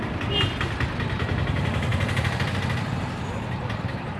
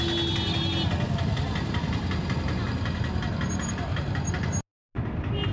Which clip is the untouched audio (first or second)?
second